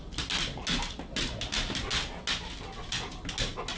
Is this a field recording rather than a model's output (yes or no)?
yes